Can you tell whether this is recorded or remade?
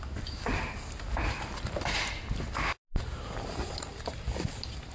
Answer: recorded